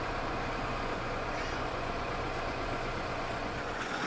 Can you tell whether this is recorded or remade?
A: remade